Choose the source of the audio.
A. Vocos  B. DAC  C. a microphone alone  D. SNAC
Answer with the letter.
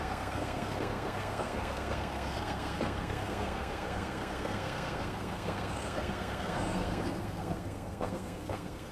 D